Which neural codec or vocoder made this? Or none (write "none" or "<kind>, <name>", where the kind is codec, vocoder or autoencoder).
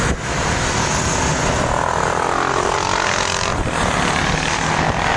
none